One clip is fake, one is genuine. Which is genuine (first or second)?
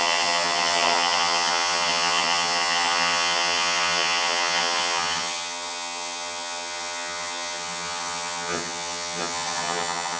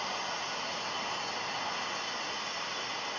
second